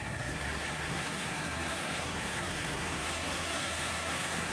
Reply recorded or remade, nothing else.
remade